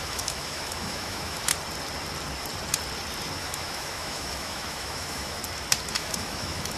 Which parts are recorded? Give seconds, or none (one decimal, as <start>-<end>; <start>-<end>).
1.5-3.4; 5.4-5.9

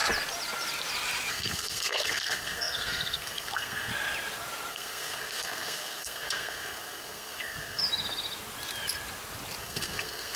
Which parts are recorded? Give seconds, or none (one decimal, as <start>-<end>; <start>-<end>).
0.0-1.3; 3.9-4.7; 7.8-9.6

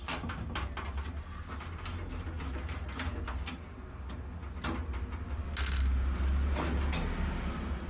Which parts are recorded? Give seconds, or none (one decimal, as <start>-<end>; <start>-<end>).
0.0-7.9

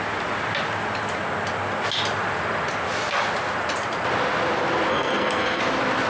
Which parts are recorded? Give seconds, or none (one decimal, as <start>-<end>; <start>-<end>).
0.0-4.9; 5.6-6.1

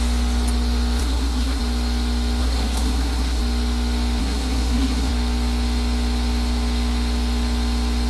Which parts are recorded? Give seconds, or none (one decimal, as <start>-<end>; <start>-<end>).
0.0-1.0; 1.6-2.4; 3.4-4.2; 5.1-8.1

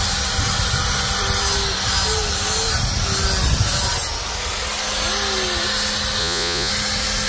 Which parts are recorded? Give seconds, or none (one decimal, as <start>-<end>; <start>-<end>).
0.0-6.2; 6.7-7.3

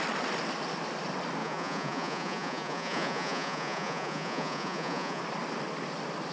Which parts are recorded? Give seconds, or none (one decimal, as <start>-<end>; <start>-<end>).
0.0-1.4; 5.2-6.3